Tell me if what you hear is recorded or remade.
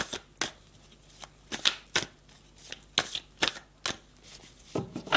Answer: recorded